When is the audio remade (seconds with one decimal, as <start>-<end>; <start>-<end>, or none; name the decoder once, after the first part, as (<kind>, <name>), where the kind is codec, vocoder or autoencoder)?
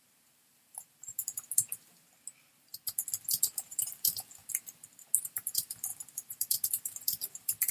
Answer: 0.0-2.0 (vocoder, BigVGAN v2); 3.4-4.4; 5.2-7.7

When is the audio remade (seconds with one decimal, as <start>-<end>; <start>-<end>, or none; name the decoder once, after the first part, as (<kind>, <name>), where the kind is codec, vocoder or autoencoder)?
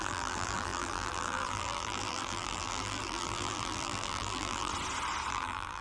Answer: 0.0-4.7 (vocoder, BigVGAN v2); 5.3-5.8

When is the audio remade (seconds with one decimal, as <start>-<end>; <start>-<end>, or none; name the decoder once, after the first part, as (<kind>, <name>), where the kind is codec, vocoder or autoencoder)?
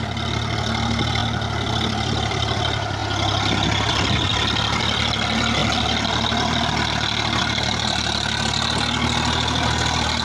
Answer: 0.0-3.0 (vocoder, BigVGAN v2); 3.9-10.2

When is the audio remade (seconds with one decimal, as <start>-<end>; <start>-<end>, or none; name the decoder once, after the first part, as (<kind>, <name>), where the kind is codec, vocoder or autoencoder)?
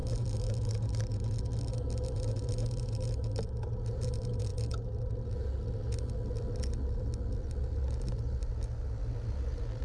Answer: none